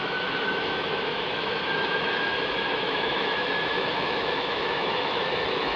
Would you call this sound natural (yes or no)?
no